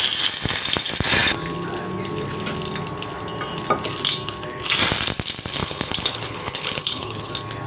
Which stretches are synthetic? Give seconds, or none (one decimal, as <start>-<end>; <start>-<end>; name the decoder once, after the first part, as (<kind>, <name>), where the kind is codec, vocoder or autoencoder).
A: 5.6-7.3 (codec, HILCodec)